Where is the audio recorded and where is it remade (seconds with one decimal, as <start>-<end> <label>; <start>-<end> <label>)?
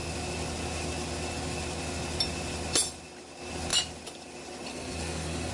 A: 0.0-4.7 recorded; 4.7-5.5 remade